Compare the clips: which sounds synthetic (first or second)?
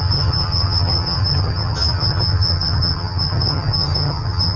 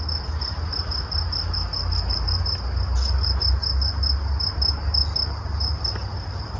first